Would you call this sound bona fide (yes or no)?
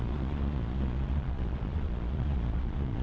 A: no